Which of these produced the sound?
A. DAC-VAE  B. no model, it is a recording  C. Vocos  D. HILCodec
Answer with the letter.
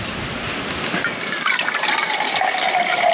B